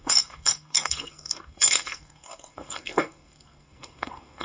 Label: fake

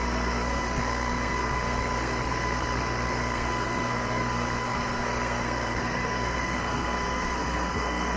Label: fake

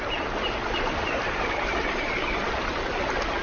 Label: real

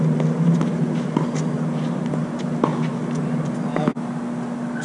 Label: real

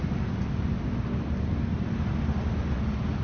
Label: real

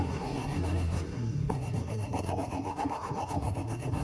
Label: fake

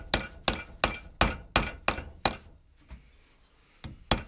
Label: real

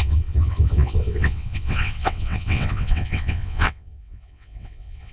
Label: fake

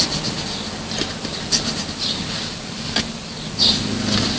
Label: real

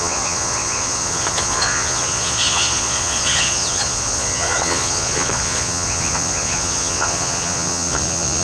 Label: fake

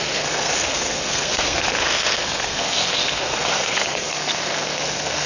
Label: fake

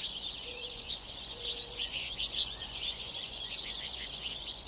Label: fake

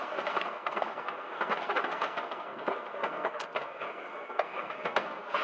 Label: fake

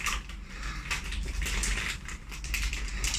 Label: real